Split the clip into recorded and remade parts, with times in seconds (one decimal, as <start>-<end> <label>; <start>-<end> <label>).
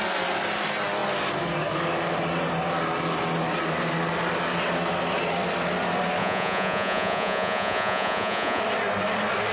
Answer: 0.0-6.2 recorded; 6.2-8.6 remade; 8.6-9.5 recorded